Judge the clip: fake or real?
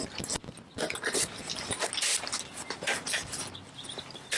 real